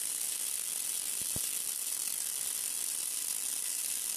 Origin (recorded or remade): recorded